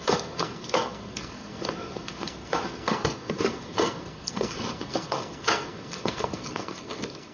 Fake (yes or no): yes